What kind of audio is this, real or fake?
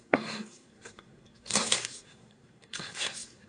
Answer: fake